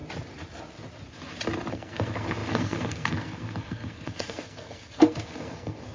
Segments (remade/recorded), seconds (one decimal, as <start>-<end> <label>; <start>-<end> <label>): 0.0-1.7 recorded; 1.7-5.9 remade